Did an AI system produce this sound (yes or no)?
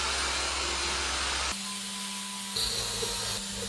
no